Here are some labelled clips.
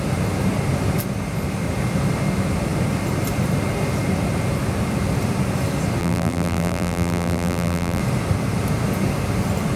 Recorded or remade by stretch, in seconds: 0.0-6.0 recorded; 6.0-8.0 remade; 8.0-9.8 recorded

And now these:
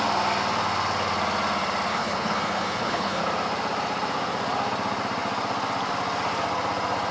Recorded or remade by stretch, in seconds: 0.0-1.9 recorded; 1.9-3.2 remade; 3.2-7.1 recorded

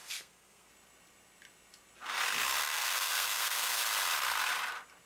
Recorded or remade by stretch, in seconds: 0.0-0.7 remade; 0.7-2.6 recorded; 2.6-3.8 remade; 3.8-5.1 recorded